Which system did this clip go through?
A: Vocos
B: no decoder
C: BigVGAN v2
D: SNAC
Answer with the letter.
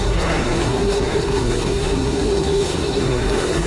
D